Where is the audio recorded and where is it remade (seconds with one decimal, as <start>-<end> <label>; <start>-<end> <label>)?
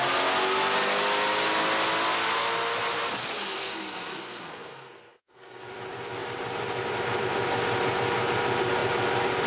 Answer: 0.0-3.2 recorded; 3.2-5.6 remade; 5.6-9.5 recorded